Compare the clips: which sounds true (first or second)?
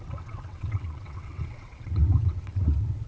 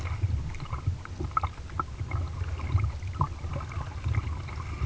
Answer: second